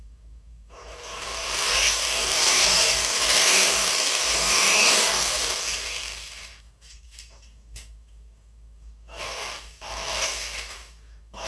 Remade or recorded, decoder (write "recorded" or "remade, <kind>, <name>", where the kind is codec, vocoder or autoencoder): remade, codec, DAC